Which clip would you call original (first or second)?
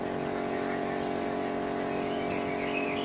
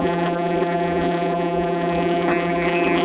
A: first